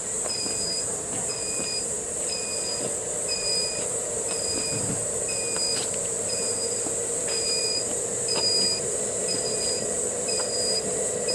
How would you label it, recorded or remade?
remade